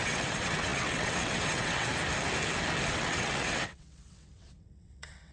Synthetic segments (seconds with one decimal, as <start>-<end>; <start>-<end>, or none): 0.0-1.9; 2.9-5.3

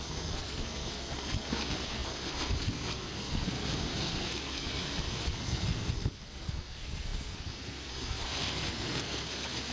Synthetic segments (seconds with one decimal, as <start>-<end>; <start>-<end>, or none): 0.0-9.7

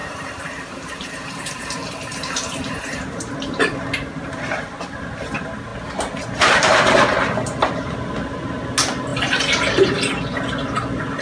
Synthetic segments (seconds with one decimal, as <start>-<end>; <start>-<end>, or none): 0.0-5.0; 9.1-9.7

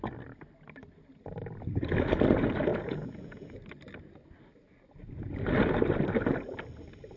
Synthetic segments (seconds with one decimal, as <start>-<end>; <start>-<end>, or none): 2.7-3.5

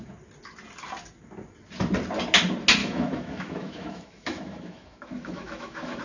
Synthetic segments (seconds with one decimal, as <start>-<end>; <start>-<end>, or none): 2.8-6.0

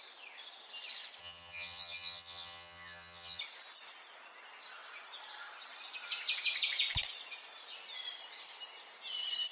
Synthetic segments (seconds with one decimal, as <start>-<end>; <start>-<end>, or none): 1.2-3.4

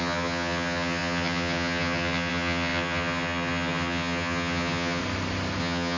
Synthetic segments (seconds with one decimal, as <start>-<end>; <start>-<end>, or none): 0.0-5.0; 5.6-6.0

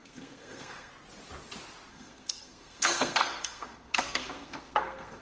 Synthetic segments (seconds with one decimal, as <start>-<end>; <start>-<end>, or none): 0.0-0.9; 1.9-5.2